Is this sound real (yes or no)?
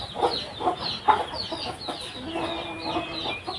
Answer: yes